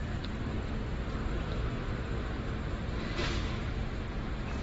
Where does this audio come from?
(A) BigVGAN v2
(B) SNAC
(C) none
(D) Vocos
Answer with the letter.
C